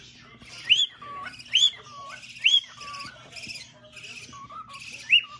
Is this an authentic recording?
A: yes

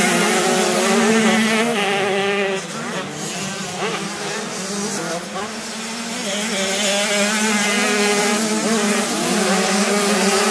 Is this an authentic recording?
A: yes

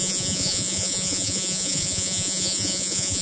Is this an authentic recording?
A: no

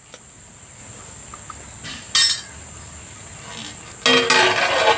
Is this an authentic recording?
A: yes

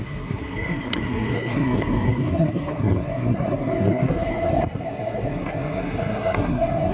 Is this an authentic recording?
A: no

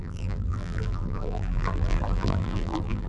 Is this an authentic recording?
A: no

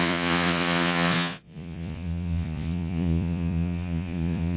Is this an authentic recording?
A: no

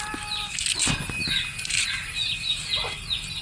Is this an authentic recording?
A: yes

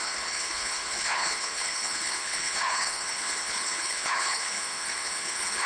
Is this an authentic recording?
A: no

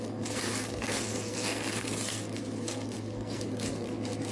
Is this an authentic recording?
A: no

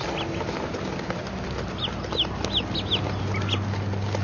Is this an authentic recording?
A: yes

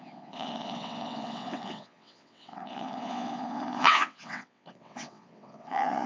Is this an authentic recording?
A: no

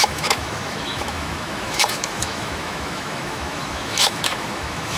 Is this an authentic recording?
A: no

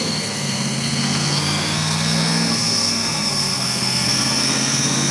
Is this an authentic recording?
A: no